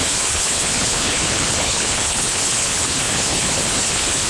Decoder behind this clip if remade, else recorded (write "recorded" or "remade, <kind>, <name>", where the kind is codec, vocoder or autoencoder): remade, codec, HILCodec